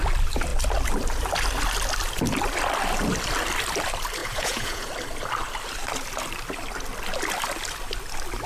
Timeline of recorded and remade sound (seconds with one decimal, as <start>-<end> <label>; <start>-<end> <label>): 0.0-4.2 recorded; 4.2-4.9 remade; 4.9-8.5 recorded